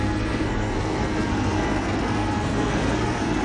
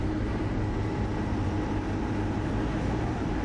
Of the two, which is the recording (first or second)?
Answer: second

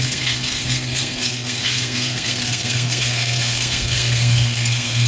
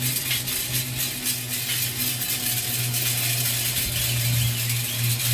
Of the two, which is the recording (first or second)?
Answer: second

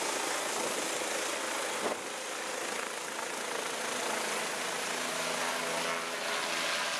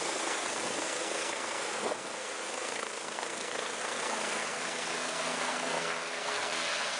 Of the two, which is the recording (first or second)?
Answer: first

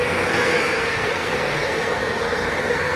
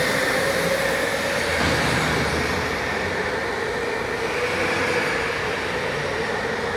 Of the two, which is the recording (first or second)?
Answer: second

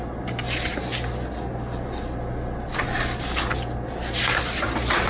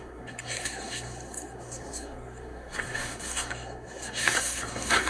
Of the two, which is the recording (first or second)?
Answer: first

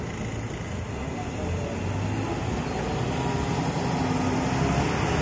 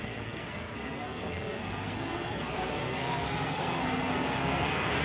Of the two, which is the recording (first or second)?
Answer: first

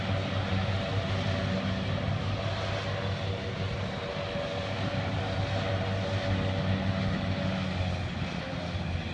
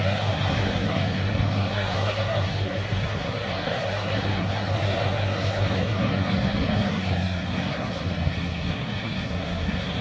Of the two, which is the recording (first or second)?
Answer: first